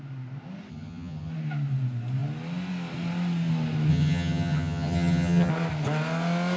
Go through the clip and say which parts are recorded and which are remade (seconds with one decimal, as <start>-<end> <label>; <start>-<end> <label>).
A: 0.0-0.7 recorded; 0.7-1.3 remade; 1.3-3.9 recorded; 3.9-5.5 remade; 5.5-6.6 recorded